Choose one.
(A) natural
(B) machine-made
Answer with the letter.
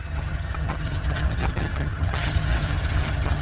B